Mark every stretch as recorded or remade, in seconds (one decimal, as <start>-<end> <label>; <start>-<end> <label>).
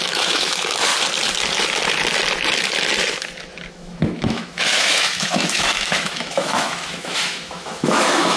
0.0-0.9 remade; 0.9-3.7 recorded; 3.7-8.4 remade